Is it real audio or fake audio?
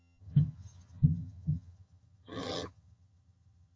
fake